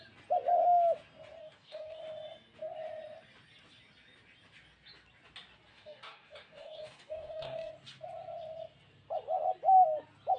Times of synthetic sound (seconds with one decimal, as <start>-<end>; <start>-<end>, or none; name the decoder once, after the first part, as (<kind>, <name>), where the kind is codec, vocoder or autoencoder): 1.4-2.0 (codec, DAC); 5.7-7.7